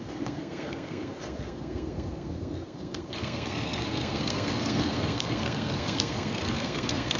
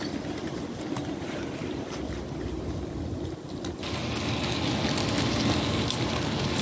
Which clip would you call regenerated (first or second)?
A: first